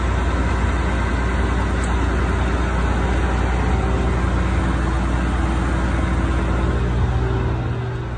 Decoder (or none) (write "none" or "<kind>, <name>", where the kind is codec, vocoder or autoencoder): none